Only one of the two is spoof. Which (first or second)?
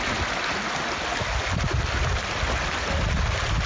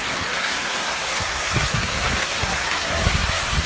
second